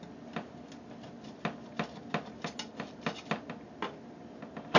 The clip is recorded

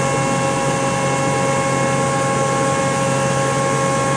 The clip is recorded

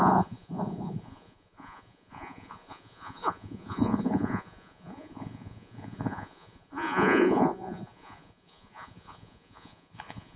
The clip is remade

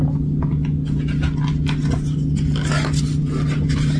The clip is recorded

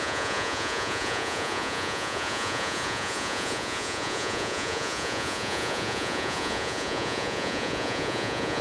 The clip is remade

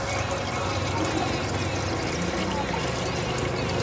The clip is recorded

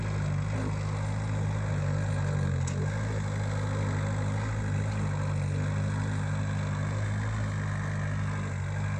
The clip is recorded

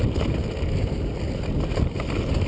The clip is recorded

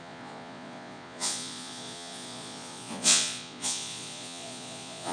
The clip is remade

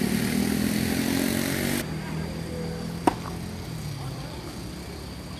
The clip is recorded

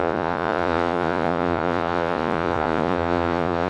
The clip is remade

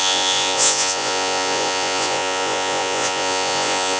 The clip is remade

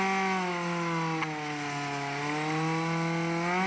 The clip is recorded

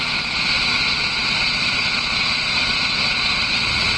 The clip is remade